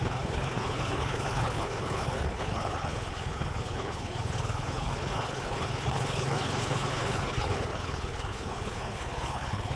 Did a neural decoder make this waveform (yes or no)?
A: yes